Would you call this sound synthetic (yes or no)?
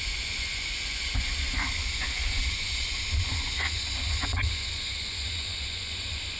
yes